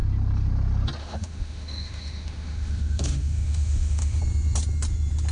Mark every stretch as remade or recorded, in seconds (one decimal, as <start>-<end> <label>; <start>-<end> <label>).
0.0-1.0 recorded; 1.0-4.2 remade; 4.2-5.3 recorded